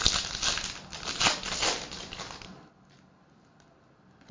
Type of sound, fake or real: real